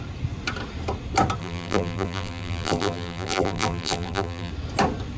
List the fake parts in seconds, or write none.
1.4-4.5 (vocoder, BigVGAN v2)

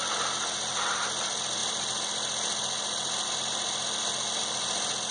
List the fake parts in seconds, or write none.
none

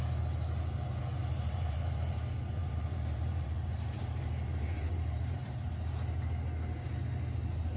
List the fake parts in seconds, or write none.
1.2-2.2 (vocoder, BigVGAN v2); 2.6-5.7

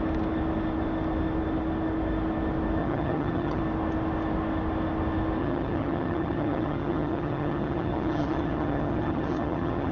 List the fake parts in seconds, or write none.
2.8-3.6 (vocoder, HiFi-GAN); 5.4-9.9

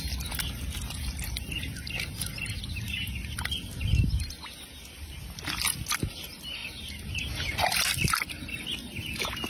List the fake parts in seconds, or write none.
6.6-8.2 (vocoder, BigVGAN v2)